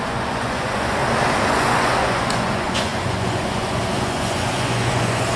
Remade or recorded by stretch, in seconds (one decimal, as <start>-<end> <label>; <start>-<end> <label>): 0.0-1.0 remade; 1.0-1.5 recorded; 1.5-5.4 remade

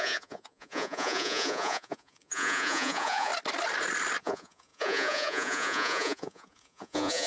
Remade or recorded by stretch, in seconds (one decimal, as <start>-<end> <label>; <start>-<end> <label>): 0.0-3.3 remade; 3.3-4.2 recorded; 4.2-7.3 remade

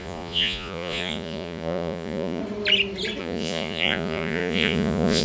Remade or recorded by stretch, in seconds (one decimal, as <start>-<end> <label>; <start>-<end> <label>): 0.0-2.4 remade; 2.4-3.2 recorded; 3.2-5.2 remade

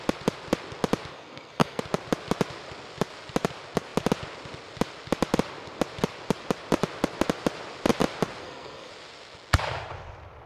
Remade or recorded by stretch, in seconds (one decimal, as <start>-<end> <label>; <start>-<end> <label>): 0.0-1.1 recorded; 1.1-1.8 remade; 1.8-8.4 recorded; 8.4-8.9 remade; 8.9-10.5 recorded

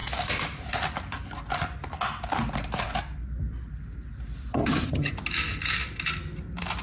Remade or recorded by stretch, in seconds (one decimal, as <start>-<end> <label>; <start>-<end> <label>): 0.0-4.5 recorded; 4.5-5.1 remade; 5.1-6.8 recorded

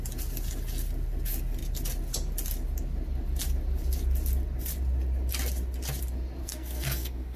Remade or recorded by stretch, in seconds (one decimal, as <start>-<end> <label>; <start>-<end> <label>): 0.0-6.4 recorded; 6.4-7.4 remade

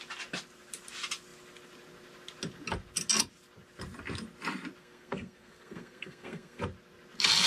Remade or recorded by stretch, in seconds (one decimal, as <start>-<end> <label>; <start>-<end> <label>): 0.0-4.8 recorded; 4.8-6.6 remade; 6.6-7.5 recorded